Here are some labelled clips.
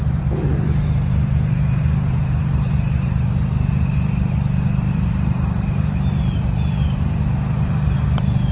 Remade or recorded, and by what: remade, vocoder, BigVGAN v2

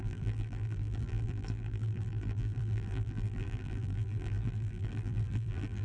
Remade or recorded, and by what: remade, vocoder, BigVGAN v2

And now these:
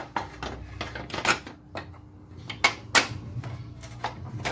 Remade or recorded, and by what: recorded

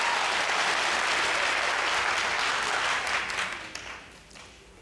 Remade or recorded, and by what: recorded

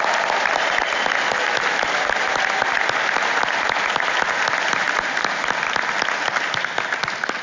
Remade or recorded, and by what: recorded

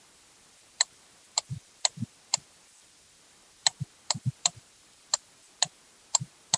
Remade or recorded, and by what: remade, vocoder, BigVGAN v2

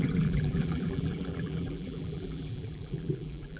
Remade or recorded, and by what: remade, vocoder, BigVGAN v2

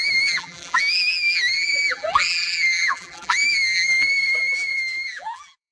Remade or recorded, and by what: remade, vocoder, BigVGAN v2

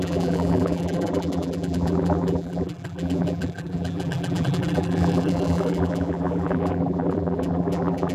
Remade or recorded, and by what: remade, vocoder, BigVGAN v2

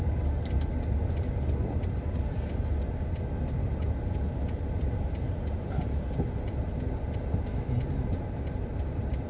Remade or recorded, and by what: recorded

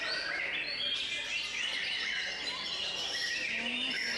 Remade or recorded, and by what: recorded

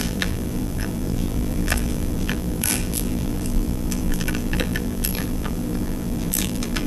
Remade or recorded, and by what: remade, vocoder, BigVGAN v2